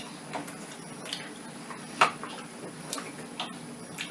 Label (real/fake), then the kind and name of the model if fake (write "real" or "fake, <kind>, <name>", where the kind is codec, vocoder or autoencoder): real